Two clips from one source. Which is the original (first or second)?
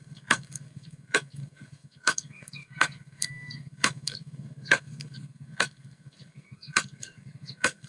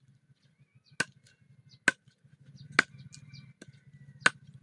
second